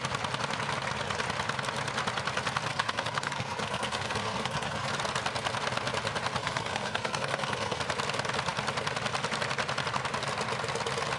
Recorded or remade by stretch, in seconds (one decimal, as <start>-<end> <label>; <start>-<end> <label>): 0.0-2.7 recorded; 2.7-4.9 remade; 4.9-6.4 recorded; 6.4-7.8 remade; 7.8-11.2 recorded